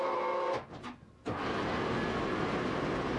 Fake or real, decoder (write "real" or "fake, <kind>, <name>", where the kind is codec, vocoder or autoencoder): real